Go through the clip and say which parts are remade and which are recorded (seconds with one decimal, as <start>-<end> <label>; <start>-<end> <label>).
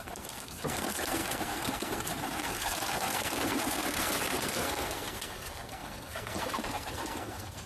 0.0-7.7 remade